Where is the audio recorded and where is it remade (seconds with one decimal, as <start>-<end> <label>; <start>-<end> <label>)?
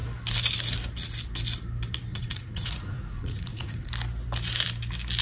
0.0-2.1 recorded; 2.1-3.9 remade; 3.9-5.2 recorded